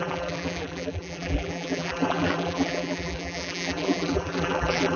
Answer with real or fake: fake